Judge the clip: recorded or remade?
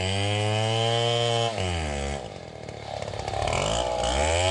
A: recorded